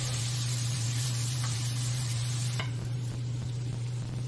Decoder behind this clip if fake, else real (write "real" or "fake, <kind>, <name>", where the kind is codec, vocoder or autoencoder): fake, vocoder, BigVGAN v2